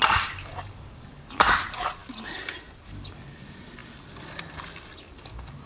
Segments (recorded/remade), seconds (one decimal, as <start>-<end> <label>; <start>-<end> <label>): 0.0-0.5 recorded; 0.5-1.6 remade; 1.6-5.7 recorded